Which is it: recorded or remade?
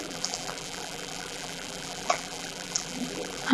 remade